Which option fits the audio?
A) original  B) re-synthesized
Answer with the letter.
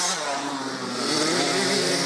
B